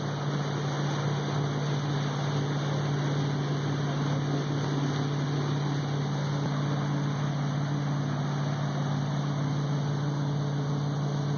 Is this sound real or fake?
real